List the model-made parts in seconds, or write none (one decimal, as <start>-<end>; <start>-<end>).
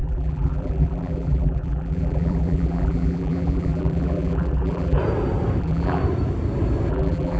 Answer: 0.0-5.0; 5.6-6.0; 6.9-7.4